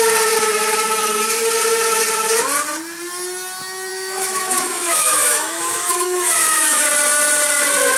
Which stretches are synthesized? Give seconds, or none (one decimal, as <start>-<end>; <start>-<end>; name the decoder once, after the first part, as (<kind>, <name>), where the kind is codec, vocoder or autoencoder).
3.9-6.9 (autoencoder, DAC-VAE)